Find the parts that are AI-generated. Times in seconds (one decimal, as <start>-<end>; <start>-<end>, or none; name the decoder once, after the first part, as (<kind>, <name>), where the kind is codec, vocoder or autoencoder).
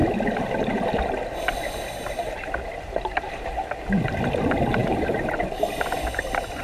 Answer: 4.8-5.4 (vocoder, BigVGAN v2)